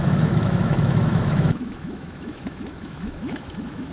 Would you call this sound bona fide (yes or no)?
no